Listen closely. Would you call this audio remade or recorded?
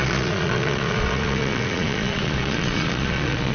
remade